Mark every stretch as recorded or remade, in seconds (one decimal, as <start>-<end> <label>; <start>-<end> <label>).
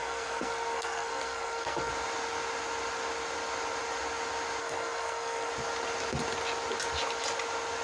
0.0-1.9 remade; 1.9-4.6 recorded; 4.6-5.5 remade; 5.5-7.8 recorded